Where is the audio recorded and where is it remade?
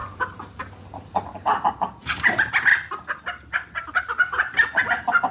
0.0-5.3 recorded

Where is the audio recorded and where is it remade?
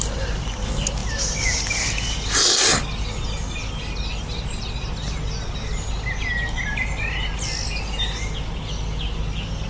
0.0-9.7 recorded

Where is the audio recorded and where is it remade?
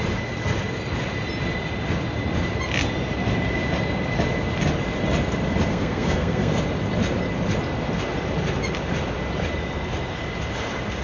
0.0-5.7 recorded; 5.7-6.6 remade; 6.6-11.0 recorded